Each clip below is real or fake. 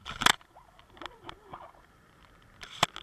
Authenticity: real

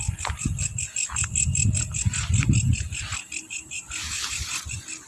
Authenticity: real